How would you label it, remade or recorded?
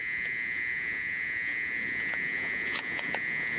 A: remade